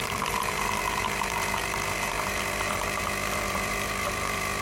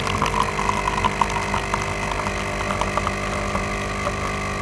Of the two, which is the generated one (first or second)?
first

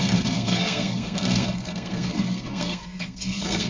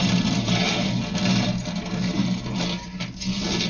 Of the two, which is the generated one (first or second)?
first